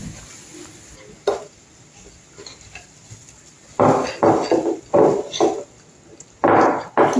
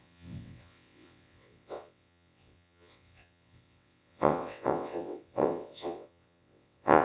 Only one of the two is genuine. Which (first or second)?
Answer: first